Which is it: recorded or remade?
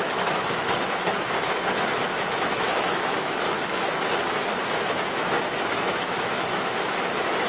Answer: remade